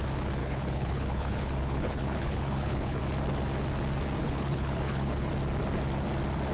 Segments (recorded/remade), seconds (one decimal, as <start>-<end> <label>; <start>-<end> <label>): 0.0-0.4 recorded; 0.4-3.0 remade; 3.0-4.2 recorded; 4.2-5.3 remade; 5.3-6.5 recorded